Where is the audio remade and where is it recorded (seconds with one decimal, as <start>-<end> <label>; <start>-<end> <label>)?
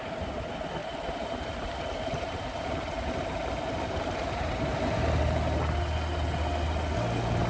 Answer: 0.0-0.8 recorded; 0.8-4.7 remade; 4.7-7.5 recorded